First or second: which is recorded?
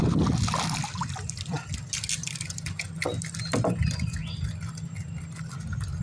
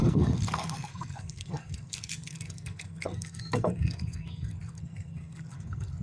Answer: first